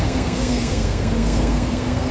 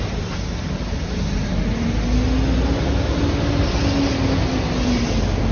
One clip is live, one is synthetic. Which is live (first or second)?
second